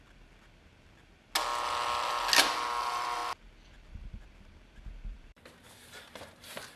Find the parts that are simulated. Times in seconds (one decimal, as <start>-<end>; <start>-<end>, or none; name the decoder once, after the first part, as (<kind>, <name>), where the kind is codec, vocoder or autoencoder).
none